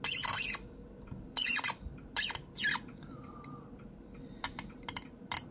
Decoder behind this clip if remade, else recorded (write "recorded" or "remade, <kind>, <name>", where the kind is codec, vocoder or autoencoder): recorded